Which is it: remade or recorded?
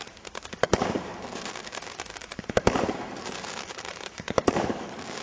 remade